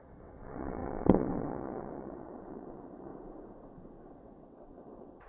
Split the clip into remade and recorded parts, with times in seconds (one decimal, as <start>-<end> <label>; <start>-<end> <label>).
0.0-3.1 remade; 3.1-4.1 recorded; 4.1-5.3 remade